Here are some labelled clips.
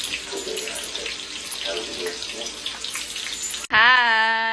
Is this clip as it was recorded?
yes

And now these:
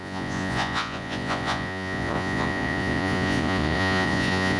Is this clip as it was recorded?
no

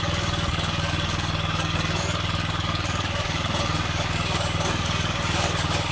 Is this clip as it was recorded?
no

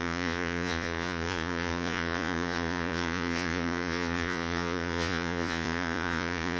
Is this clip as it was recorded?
no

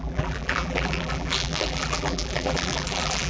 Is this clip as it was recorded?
no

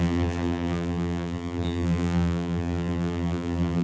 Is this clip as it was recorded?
no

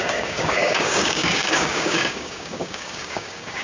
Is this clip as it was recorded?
no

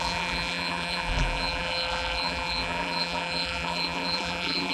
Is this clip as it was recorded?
no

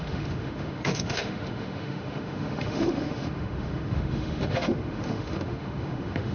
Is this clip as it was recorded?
no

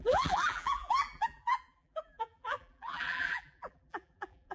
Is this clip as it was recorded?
no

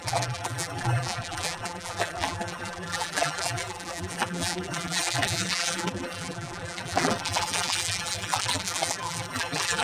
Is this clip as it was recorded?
no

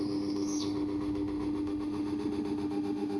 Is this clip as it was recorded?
no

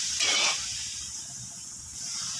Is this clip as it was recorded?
no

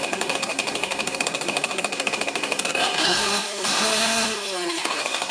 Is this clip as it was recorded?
no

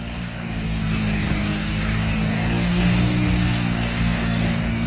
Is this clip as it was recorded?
no